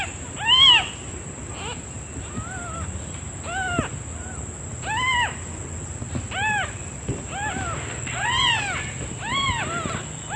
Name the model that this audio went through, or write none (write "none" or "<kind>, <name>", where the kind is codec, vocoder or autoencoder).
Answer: none